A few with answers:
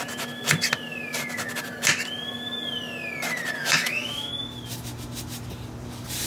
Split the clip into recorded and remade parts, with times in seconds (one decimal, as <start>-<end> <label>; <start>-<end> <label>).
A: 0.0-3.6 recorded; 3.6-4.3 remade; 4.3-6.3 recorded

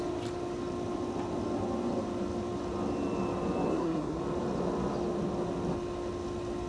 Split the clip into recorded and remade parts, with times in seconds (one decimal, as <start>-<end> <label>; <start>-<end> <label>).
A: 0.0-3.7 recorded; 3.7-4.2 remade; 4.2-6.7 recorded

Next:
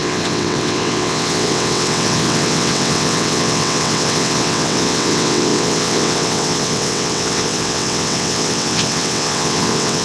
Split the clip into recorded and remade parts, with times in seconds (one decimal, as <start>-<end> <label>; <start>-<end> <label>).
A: 0.0-10.0 remade

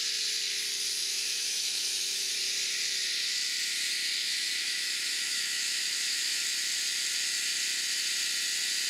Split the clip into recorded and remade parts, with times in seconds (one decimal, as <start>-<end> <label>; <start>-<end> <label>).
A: 0.0-1.0 recorded; 1.0-2.3 remade; 2.3-4.2 recorded; 4.2-6.4 remade; 6.4-8.9 recorded

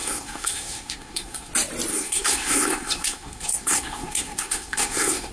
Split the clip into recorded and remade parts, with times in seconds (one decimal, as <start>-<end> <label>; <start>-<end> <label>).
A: 0.0-1.5 remade; 1.5-1.9 recorded; 1.9-5.3 remade

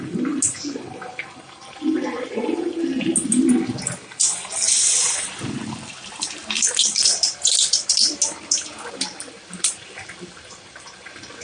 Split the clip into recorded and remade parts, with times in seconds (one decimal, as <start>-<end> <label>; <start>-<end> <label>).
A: 0.0-5.6 recorded; 5.6-8.2 remade; 8.2-11.4 recorded

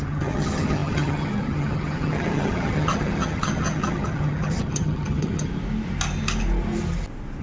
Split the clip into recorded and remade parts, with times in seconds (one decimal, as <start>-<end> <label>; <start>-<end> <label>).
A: 0.0-5.5 remade; 5.5-7.4 recorded

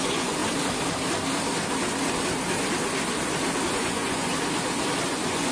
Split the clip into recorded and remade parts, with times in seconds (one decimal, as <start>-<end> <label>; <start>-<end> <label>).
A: 0.0-0.4 remade; 0.4-3.7 recorded; 3.7-4.3 remade; 4.3-5.1 recorded; 5.1-5.5 remade